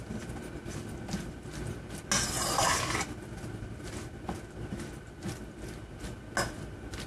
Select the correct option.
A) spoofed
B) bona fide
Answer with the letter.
B